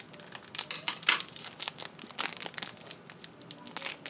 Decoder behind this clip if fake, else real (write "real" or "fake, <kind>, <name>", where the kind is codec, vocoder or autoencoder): real